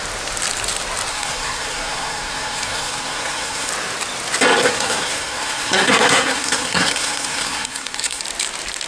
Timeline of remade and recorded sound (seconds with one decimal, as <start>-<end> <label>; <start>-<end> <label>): 0.0-1.1 recorded; 1.1-3.7 remade; 3.7-4.6 recorded; 4.6-8.2 remade; 8.2-8.9 recorded